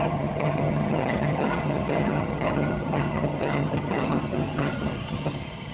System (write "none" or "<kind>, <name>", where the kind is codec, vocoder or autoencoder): vocoder, HiFi-GAN